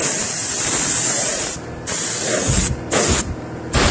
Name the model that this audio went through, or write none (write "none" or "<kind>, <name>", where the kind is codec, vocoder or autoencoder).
none